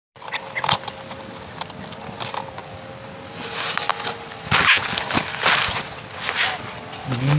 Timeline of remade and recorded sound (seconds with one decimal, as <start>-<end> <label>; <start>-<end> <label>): 0.0-7.4 recorded